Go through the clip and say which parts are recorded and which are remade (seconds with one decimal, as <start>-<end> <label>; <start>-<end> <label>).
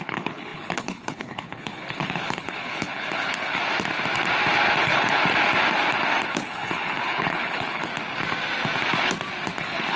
0.0-3.6 remade; 3.6-4.8 recorded; 4.8-5.2 remade; 5.2-6.3 recorded; 6.3-7.9 remade; 7.9-9.6 recorded; 9.6-10.0 remade